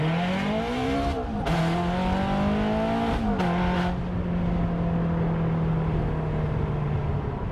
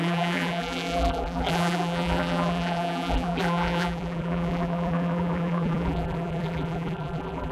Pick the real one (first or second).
first